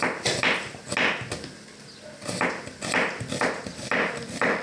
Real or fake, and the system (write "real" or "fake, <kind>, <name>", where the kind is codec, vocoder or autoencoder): real